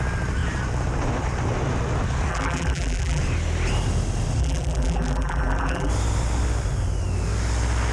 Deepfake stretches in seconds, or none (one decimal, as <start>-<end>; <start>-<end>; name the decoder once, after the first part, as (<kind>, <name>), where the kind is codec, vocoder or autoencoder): 2.3-3.2 (vocoder, BigVGAN v2); 4.4-5.9